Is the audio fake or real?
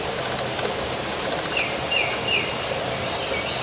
real